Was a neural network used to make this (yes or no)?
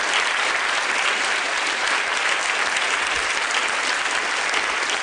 no